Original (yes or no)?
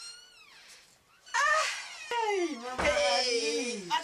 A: yes